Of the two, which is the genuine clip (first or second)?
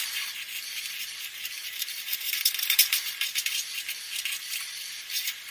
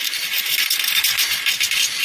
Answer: second